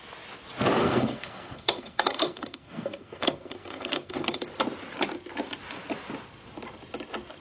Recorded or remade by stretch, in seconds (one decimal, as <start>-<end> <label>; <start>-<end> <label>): 0.0-0.8 recorded; 0.8-4.4 remade; 4.4-7.4 recorded